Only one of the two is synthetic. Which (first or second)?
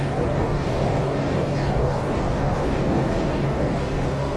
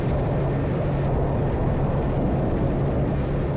first